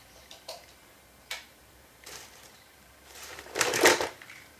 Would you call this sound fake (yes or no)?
yes